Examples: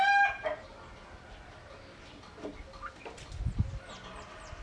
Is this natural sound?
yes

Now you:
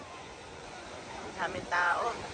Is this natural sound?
no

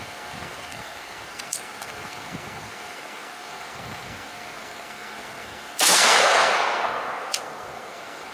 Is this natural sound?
no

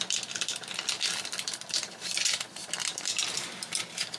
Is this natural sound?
no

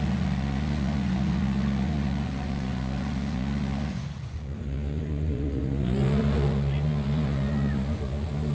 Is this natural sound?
no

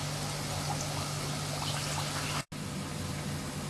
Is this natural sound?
yes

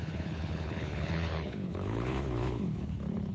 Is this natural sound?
no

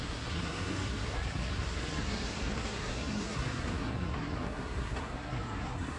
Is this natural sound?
no